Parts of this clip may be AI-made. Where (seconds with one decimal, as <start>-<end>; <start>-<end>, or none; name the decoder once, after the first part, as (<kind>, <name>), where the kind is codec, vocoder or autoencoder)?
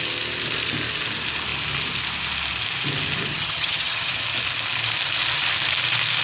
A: 3.3-4.1 (vocoder, HiFi-GAN)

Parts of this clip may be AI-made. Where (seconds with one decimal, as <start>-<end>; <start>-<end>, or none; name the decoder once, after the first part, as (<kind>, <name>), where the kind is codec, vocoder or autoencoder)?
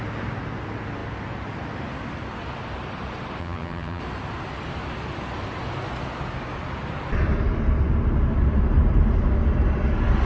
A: 3.4-4.0 (vocoder, HiFi-GAN)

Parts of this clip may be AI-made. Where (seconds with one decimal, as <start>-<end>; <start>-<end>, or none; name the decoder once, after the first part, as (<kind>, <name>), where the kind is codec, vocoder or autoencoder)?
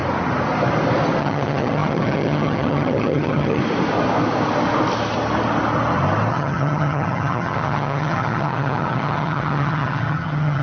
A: 1.2-3.6 (vocoder, HiFi-GAN); 6.3-10.6